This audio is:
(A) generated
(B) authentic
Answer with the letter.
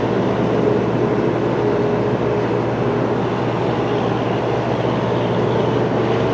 B